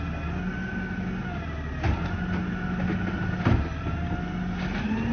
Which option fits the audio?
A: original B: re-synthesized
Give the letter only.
A